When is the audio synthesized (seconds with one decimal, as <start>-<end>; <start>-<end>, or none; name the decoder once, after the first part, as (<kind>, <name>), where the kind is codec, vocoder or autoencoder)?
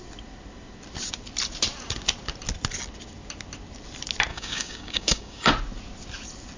4.3-5.5 (codec, DAC)